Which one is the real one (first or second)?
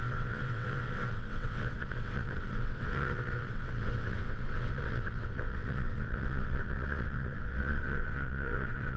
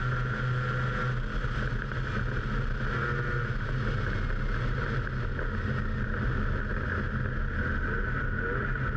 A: second